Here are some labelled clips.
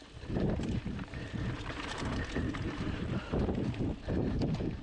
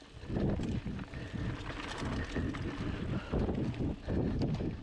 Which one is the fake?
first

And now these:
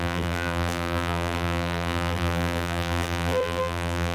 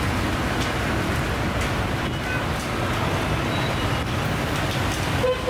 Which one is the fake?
first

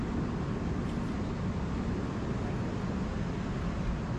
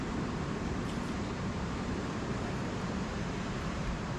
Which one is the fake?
second